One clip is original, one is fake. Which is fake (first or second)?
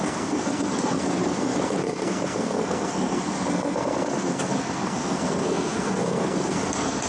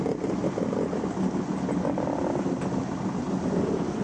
first